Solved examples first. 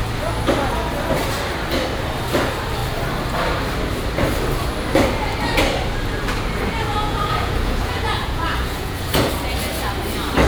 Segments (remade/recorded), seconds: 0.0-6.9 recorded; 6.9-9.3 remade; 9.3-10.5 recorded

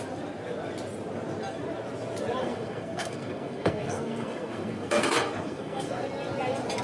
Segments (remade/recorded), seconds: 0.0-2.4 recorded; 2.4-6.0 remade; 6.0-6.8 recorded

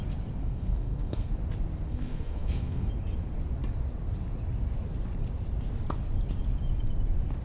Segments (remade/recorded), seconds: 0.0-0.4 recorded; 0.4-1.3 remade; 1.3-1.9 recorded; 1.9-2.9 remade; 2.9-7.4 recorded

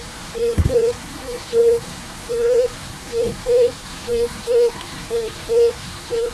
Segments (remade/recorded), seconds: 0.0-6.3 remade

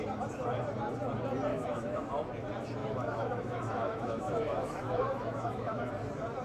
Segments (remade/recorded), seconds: 0.0-1.5 recorded; 1.5-2.1 remade; 2.1-2.8 recorded; 2.8-5.9 remade; 5.9-6.4 recorded

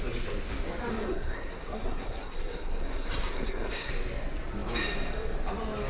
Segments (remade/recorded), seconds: 0.0-0.9 recorded; 0.9-3.9 remade; 3.9-5.9 recorded

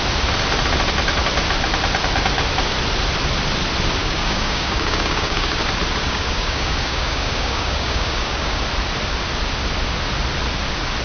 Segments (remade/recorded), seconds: 0.0-4.0 recorded; 4.0-5.6 remade; 5.6-6.0 recorded; 6.0-8.6 remade; 8.6-11.0 recorded